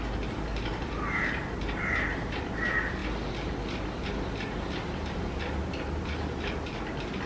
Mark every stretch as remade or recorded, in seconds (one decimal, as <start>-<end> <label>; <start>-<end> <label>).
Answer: 0.0-7.3 recorded